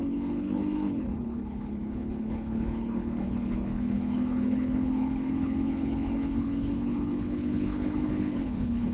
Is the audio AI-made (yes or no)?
yes